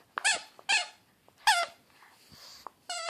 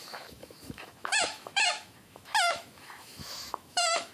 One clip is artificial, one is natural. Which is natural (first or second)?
first